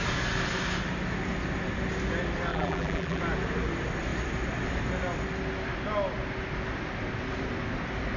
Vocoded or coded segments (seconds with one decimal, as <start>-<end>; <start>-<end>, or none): 2.5-3.2